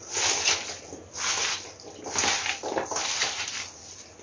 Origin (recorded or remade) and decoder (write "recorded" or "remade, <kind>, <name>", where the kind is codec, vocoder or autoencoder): recorded